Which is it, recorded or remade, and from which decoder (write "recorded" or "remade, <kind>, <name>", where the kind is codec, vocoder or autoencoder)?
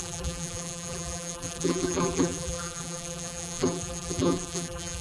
remade, vocoder, BigVGAN v2